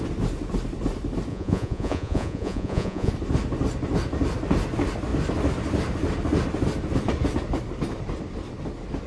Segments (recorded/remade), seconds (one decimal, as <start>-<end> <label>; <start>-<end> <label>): 0.0-1.3 recorded; 1.3-3.1 remade; 3.1-9.1 recorded